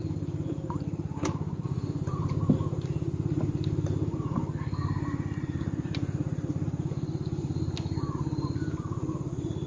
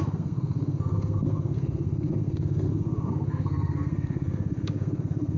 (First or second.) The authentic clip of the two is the first